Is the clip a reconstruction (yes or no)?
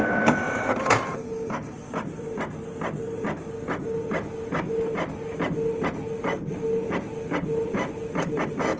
no